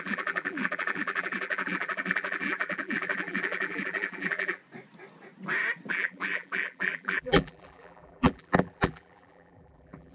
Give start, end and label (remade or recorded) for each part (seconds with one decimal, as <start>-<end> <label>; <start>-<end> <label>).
0.0-4.6 remade; 4.6-5.9 recorded; 5.9-10.1 remade